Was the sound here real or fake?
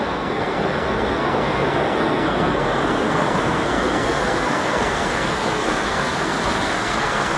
fake